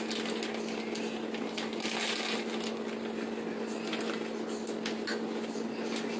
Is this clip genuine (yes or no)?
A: yes